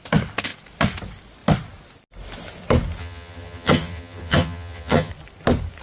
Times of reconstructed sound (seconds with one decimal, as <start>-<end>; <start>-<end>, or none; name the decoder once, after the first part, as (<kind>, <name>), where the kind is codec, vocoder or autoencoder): 3.0-5.1 (vocoder, HiFi-GAN)